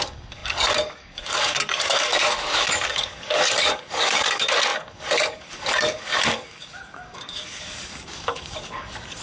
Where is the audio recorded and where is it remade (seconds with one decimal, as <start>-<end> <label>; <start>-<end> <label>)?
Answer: 0.0-9.2 remade